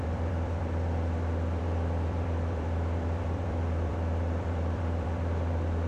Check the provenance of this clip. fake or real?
fake